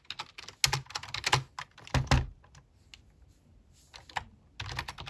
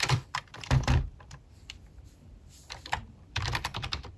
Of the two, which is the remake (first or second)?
second